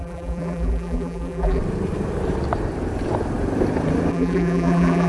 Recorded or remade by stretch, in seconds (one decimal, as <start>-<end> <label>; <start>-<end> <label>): 0.0-1.6 remade; 1.6-4.1 recorded; 4.1-5.1 remade